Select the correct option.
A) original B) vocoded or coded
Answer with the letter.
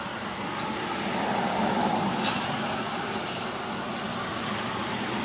A